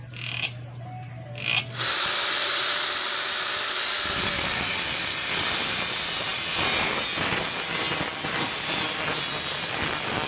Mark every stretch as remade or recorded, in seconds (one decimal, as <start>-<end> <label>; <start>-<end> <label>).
0.0-10.3 recorded